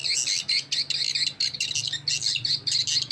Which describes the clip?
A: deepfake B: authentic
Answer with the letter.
B